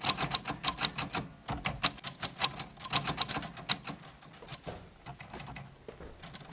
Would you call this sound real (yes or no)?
yes